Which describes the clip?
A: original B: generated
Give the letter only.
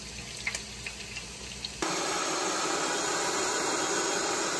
A